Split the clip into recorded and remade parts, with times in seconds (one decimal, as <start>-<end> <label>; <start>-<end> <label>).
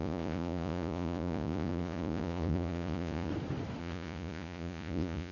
0.0-3.3 remade; 3.3-3.8 recorded; 3.8-5.3 remade